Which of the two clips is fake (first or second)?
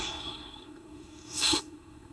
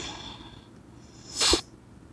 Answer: first